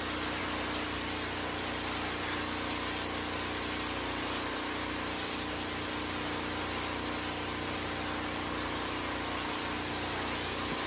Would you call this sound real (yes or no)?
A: yes